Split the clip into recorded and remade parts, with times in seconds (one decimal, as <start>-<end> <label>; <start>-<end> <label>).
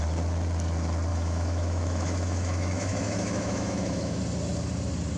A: 0.0-1.1 recorded; 1.1-4.2 remade; 4.2-5.2 recorded